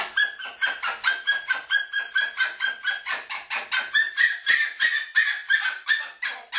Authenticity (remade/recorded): recorded